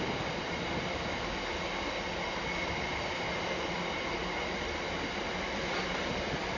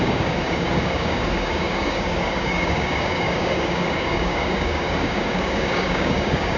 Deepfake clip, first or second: second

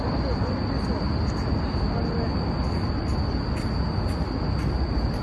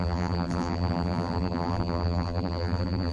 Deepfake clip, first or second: second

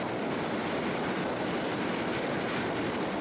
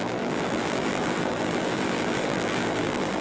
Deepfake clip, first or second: second